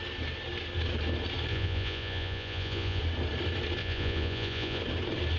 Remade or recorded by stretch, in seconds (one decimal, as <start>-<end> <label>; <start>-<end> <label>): 0.0-1.5 recorded; 1.5-3.0 remade; 3.0-3.8 recorded; 3.8-4.8 remade; 4.8-5.4 recorded